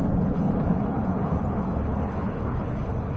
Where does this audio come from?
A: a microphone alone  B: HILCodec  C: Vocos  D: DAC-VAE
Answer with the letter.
B